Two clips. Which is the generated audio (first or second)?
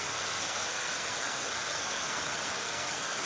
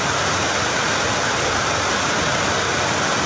first